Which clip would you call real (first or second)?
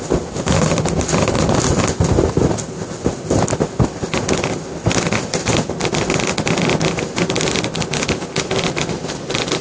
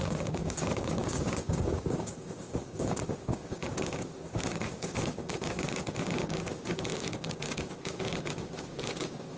first